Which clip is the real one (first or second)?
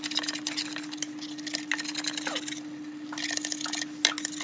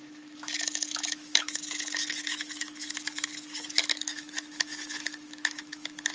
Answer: first